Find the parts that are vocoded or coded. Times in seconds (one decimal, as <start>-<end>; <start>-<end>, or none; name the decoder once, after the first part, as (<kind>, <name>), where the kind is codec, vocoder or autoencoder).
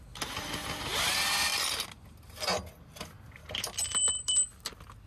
none